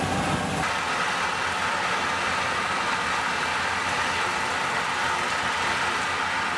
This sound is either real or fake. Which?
real